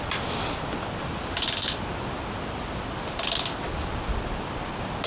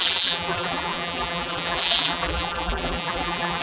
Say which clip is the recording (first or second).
first